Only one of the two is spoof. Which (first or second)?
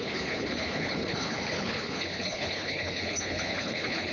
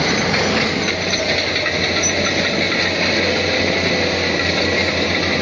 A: first